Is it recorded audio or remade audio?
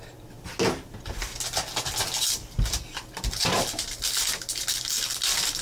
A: recorded